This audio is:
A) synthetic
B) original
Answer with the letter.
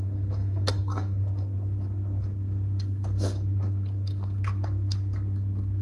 A